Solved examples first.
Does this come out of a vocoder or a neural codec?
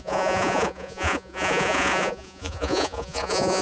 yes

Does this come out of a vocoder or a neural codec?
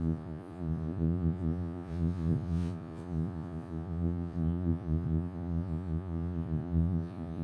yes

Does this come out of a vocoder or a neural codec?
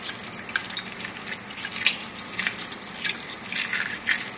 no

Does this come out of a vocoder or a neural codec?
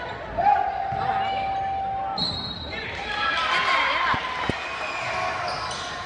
no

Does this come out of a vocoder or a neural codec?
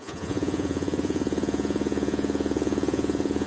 yes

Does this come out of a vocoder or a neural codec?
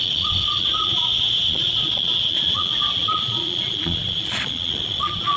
yes